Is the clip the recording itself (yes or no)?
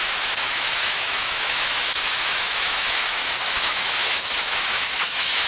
no